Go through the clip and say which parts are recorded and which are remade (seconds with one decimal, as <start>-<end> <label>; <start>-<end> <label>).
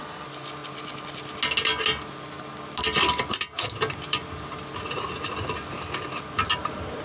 0.0-7.0 recorded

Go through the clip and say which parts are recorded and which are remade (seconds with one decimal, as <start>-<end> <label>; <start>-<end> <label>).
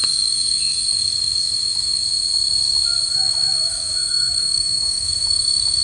0.0-2.0 remade; 2.0-3.1 recorded; 3.1-5.8 remade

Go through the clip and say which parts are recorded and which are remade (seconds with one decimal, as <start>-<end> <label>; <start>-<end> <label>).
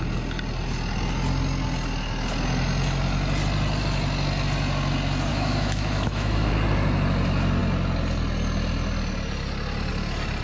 0.0-5.3 recorded; 5.3-6.5 remade; 6.5-10.4 recorded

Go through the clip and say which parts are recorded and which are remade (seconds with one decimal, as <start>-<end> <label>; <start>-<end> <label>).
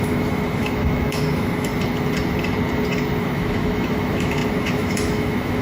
0.0-1.7 remade; 1.7-3.2 recorded; 3.2-5.6 remade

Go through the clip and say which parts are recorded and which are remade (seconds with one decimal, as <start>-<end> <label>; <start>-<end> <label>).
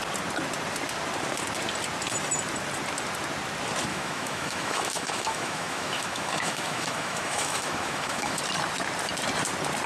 0.0-3.9 recorded; 3.9-8.4 remade; 8.4-9.9 recorded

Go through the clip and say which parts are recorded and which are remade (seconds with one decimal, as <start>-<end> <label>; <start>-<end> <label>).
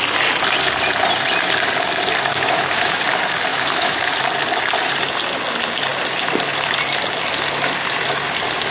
0.0-2.3 recorded; 2.3-3.0 remade; 3.0-3.5 recorded; 3.5-4.0 remade; 4.0-8.7 recorded